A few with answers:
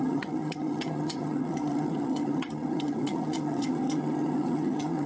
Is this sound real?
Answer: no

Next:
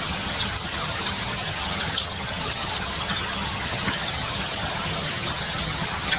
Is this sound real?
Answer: no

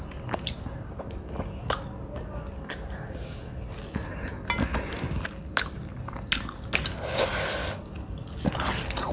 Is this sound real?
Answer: yes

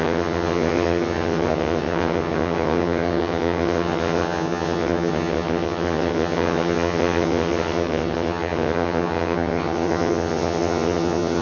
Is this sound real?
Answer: no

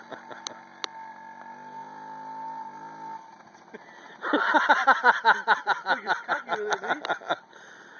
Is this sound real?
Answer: yes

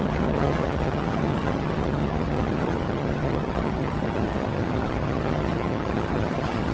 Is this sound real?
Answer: no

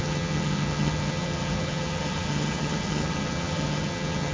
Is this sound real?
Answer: no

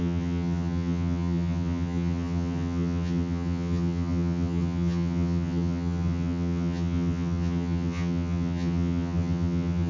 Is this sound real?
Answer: no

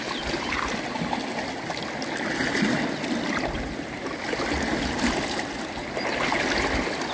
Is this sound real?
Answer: yes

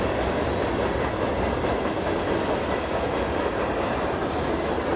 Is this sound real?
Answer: yes